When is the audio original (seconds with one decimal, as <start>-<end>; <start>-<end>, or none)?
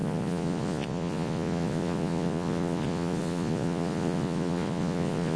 none